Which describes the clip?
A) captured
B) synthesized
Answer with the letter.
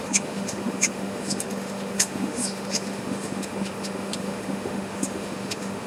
B